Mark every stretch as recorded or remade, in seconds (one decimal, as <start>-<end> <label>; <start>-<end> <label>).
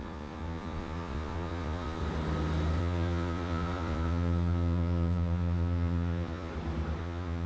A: 0.0-2.0 remade; 2.0-2.8 recorded; 2.8-6.5 remade; 6.5-7.0 recorded; 7.0-7.5 remade